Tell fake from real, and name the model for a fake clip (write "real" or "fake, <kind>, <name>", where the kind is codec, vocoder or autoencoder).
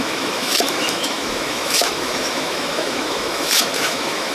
fake, autoencoder, DAC-VAE